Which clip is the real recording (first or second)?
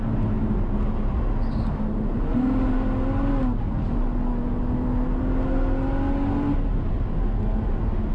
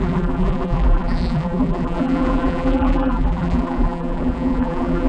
first